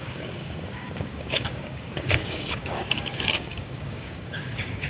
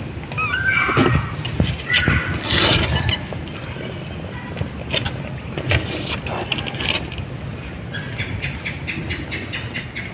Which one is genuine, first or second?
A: second